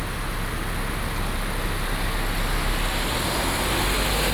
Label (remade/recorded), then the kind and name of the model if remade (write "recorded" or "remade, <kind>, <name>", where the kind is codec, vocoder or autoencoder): recorded